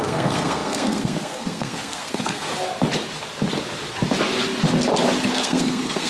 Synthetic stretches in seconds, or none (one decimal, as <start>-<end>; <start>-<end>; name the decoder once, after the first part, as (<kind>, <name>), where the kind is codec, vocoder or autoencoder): 0.0-2.5 (codec, SNAC); 5.3-6.1